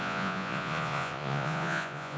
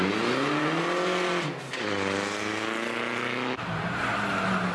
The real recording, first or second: second